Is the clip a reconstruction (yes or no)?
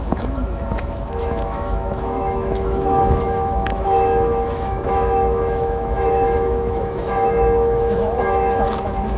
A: yes